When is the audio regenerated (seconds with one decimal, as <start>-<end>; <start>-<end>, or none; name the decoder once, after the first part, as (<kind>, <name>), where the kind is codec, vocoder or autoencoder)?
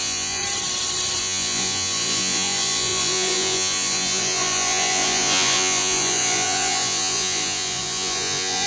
0.0-0.4 (vocoder, Vocos); 1.2-8.7